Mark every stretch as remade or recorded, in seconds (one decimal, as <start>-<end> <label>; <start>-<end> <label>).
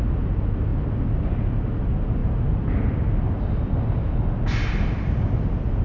0.0-5.8 recorded